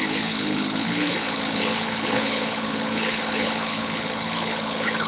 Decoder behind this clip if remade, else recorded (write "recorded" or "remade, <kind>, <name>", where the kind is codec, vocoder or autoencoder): remade, codec, HILCodec